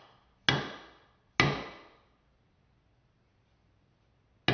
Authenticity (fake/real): real